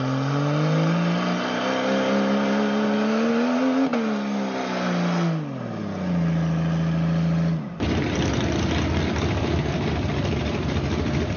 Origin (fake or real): real